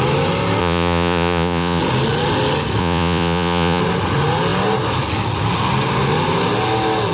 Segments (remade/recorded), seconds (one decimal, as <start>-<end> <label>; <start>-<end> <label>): 0.0-0.6 recorded; 0.6-1.8 remade; 1.8-2.8 recorded; 2.8-3.8 remade; 3.8-7.1 recorded